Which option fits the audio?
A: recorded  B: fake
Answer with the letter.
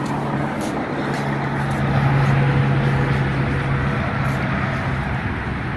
A